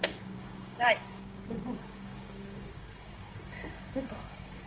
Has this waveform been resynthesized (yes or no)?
yes